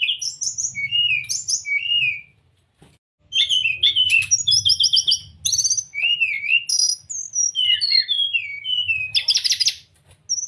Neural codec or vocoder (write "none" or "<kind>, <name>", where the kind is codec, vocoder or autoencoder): none